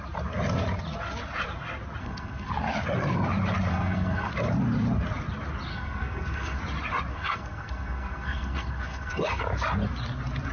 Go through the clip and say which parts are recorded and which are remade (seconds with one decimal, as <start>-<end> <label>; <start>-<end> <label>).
0.0-2.0 recorded; 2.0-2.5 remade; 2.5-3.7 recorded; 3.7-4.3 remade; 4.3-5.7 recorded; 5.7-6.6 remade; 6.6-7.1 recorded; 7.1-9.4 remade; 9.4-10.5 recorded